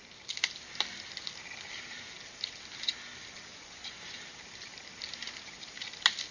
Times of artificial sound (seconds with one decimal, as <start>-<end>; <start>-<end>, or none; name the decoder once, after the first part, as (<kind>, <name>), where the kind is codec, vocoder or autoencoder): 3.5-4.2 (vocoder, Vocos)